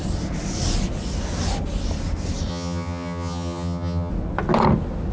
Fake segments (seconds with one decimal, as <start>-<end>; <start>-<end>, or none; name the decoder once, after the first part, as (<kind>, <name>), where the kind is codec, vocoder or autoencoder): 2.5-4.1 (vocoder, HiFi-GAN)